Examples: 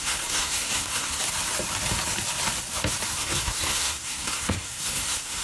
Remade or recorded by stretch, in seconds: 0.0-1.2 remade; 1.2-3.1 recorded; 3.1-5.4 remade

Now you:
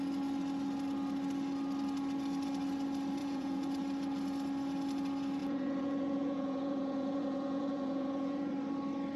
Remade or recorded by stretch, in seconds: 0.0-3.2 recorded; 3.2-3.8 remade; 3.8-5.4 recorded; 5.4-8.5 remade; 8.5-9.2 recorded